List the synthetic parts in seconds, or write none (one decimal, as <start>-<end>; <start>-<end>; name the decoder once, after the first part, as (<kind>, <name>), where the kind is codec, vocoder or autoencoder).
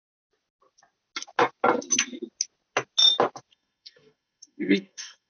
3.5-5.3 (codec, SNAC)